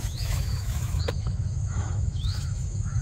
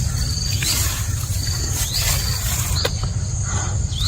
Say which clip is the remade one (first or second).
first